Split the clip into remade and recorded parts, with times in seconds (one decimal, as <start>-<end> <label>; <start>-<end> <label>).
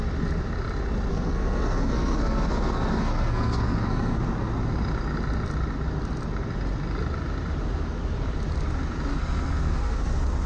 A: 0.0-1.1 recorded; 1.1-4.2 remade; 4.2-9.1 recorded; 9.1-10.1 remade; 10.1-10.5 recorded